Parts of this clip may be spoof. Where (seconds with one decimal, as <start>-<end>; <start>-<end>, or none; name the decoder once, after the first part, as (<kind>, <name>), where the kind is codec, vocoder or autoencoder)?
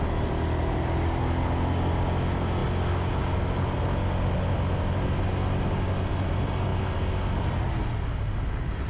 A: none